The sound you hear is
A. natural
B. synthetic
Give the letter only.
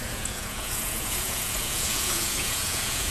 B